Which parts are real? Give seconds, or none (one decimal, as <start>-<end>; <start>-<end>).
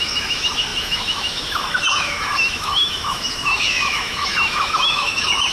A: none